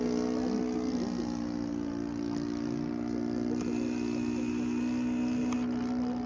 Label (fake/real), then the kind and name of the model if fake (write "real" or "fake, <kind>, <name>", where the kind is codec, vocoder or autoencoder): real